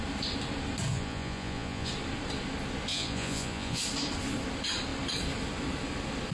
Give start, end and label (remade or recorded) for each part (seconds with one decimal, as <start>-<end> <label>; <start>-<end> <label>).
0.0-0.9 recorded; 0.9-1.9 remade; 1.9-2.9 recorded; 2.9-3.8 remade; 3.8-6.3 recorded